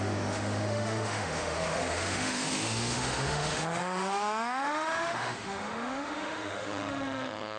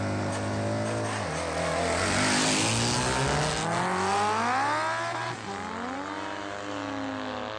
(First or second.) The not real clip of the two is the first